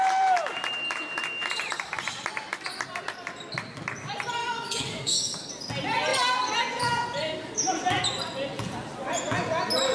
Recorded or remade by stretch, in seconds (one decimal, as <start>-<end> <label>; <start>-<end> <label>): 0.0-4.4 recorded; 4.4-5.5 remade; 5.5-9.9 recorded